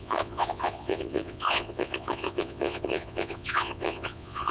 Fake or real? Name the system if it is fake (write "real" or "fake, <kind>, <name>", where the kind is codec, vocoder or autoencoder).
fake, vocoder, Vocos